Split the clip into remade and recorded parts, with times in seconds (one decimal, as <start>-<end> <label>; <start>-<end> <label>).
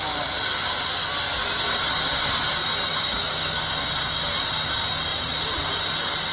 0.0-2.9 recorded; 2.9-3.6 remade; 3.6-6.3 recorded